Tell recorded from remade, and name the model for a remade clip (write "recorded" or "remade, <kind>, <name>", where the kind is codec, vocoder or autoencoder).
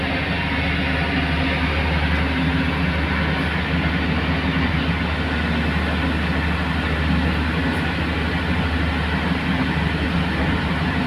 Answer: recorded